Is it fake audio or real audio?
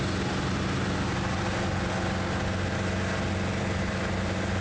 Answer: real